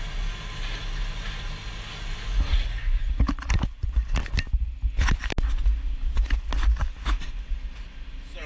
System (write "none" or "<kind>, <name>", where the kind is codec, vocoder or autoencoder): none